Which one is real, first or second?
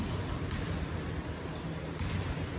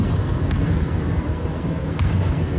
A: first